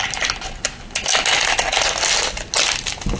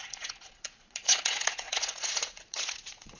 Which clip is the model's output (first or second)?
second